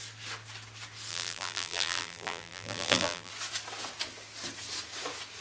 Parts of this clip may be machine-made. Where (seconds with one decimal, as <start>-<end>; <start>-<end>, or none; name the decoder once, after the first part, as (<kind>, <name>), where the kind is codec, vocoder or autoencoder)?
1.1-3.3 (vocoder, BigVGAN v2)